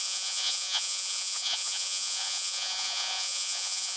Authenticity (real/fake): fake